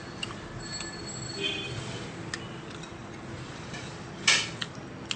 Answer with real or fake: real